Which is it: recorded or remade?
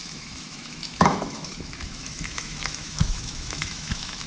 remade